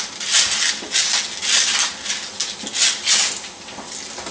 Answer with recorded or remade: recorded